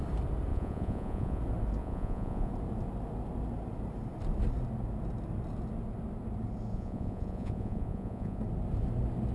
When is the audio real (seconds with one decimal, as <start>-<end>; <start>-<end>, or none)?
0.0-0.5; 1.4-1.8; 2.5-6.7; 8.4-9.3